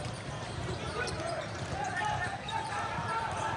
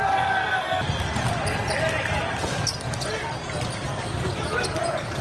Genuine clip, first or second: second